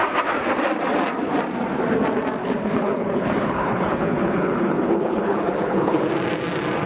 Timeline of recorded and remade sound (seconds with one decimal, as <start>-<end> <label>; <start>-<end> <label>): 0.0-2.4 recorded; 2.4-6.1 remade; 6.1-6.9 recorded